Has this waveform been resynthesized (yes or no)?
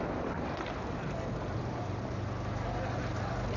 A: no